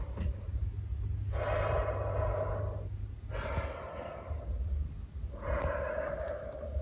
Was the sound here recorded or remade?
recorded